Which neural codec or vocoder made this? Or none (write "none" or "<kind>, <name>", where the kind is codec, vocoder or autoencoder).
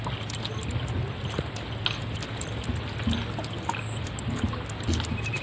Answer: none